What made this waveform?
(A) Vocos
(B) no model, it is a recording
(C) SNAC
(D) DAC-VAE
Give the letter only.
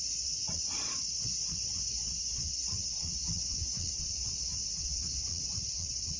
A